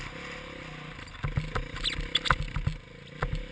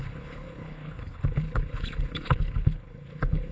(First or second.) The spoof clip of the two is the second